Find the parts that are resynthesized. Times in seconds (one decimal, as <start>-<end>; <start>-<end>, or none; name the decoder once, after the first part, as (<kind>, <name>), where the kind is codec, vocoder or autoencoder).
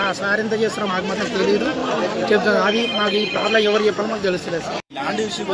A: 1.8-5.1 (codec, DAC)